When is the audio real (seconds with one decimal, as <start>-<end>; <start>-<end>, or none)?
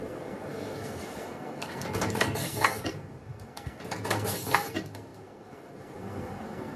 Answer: none